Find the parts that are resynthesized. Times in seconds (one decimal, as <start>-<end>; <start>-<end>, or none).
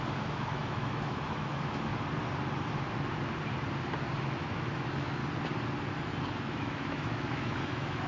0.0-1.9; 4.2-5.2; 6.5-8.1